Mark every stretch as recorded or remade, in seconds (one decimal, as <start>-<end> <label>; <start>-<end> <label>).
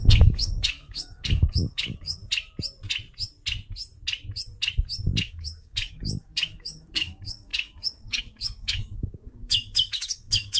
0.0-2.2 remade; 2.2-5.2 recorded; 5.2-10.6 remade